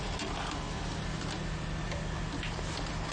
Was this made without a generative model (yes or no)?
yes